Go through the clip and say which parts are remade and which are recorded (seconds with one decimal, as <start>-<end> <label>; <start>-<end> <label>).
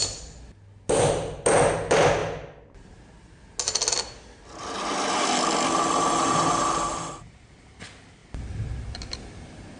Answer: 0.0-9.8 recorded